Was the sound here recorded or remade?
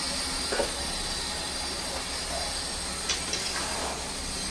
recorded